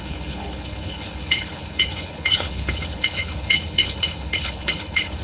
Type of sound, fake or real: fake